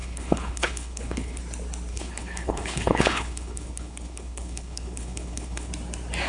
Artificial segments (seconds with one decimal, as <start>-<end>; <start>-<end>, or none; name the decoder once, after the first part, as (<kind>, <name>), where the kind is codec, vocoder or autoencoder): 0.0-1.4 (codec, HILCodec); 1.9-5.7